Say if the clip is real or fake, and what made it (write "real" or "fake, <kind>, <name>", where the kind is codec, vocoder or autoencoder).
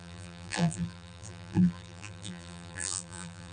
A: fake, vocoder, BigVGAN v2